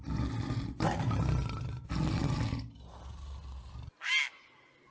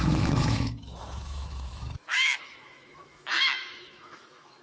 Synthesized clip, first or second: second